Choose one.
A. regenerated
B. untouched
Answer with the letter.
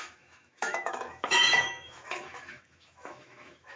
A